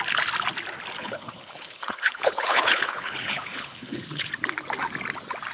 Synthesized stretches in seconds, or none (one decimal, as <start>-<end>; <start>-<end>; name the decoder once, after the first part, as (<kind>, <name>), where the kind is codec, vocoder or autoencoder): 1.0-4.3 (codec, HILCodec)